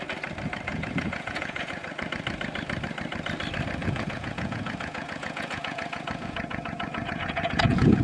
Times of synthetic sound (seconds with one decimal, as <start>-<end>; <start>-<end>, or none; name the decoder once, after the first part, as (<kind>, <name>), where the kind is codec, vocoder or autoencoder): 0.7-2.1 (vocoder, Vocos); 3.8-8.0